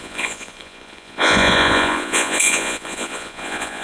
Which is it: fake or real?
fake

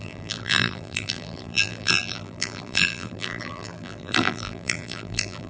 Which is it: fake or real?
fake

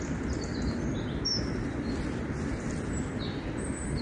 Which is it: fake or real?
real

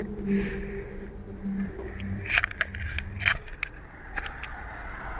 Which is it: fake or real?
real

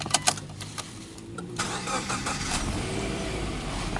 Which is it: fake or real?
fake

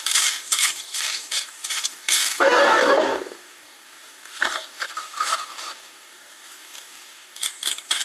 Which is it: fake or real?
fake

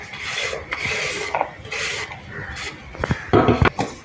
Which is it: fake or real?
real